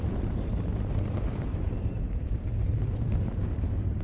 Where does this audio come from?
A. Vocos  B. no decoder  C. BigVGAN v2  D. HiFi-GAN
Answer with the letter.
C